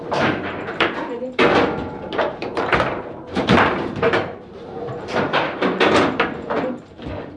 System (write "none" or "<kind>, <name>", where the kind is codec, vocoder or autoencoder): vocoder, BigVGAN v2